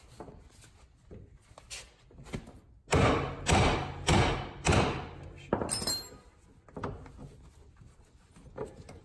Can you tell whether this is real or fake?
real